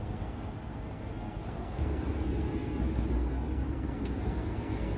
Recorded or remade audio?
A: remade